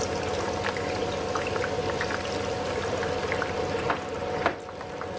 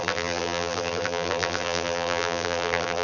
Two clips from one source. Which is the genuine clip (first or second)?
first